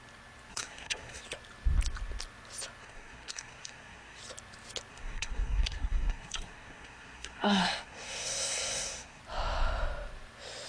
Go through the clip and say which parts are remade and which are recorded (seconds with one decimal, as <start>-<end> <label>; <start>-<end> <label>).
0.0-0.5 recorded; 0.5-1.2 remade; 1.2-2.8 recorded; 2.8-4.2 remade; 4.2-4.9 recorded; 4.9-9.2 remade; 9.2-10.7 recorded